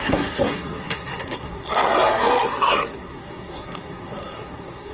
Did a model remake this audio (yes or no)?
yes